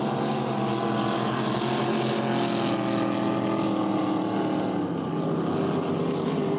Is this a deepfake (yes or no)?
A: no